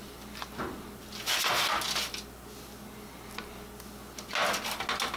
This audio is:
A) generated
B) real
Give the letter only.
B